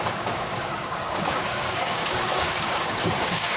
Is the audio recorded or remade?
remade